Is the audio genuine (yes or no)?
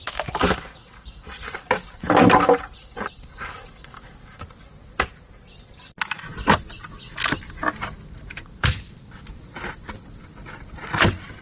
yes